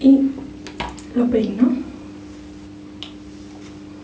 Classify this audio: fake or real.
real